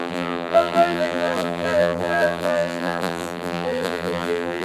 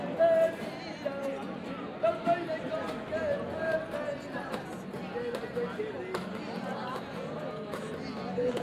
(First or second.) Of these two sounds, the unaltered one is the second